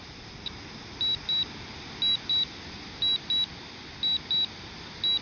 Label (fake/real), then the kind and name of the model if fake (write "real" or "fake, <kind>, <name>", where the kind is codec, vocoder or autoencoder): real